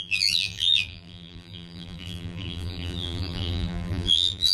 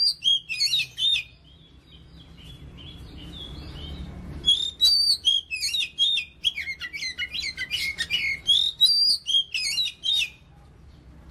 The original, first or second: second